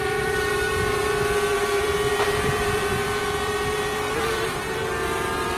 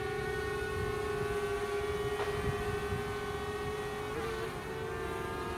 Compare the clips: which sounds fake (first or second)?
first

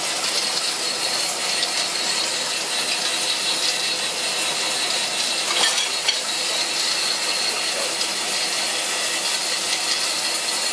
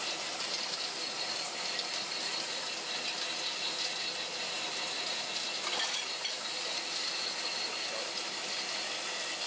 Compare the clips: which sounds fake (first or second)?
second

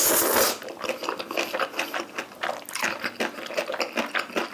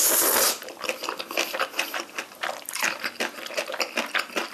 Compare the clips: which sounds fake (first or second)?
second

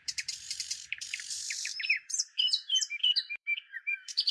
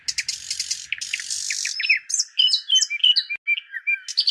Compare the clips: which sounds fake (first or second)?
first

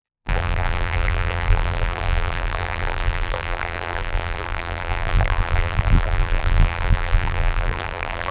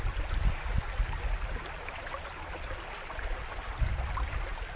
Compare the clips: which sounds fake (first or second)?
first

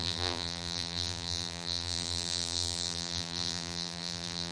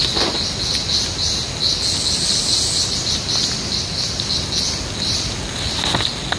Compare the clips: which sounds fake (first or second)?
first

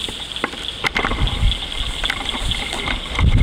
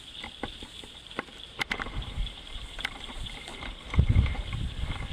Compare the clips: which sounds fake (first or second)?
second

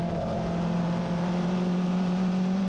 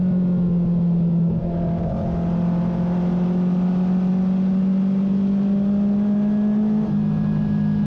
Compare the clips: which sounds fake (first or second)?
first